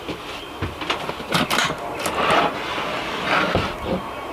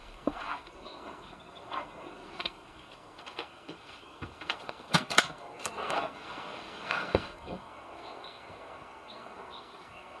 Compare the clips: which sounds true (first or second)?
first